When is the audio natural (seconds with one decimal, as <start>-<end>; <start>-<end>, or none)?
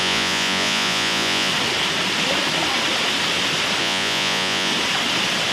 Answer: 1.5-3.8; 4.7-5.5